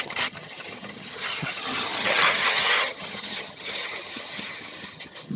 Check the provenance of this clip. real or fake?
fake